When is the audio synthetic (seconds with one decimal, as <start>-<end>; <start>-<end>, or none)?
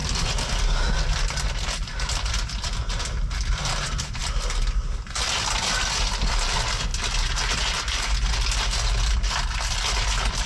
none